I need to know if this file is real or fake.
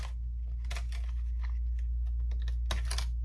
real